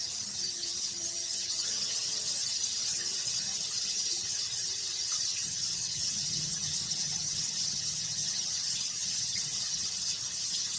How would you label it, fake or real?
fake